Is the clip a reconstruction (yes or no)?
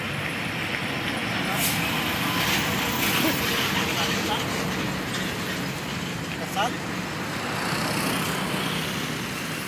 no